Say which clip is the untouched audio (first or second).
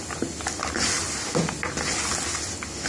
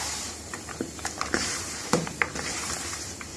first